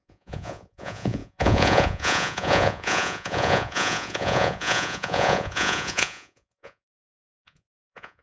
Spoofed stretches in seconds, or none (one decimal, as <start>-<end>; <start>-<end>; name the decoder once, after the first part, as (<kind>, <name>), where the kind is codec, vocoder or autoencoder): 0.0-8.2 (vocoder, Vocos)